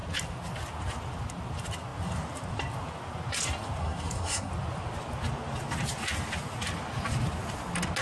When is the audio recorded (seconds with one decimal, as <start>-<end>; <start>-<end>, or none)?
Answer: 0.0-3.8; 4.5-8.0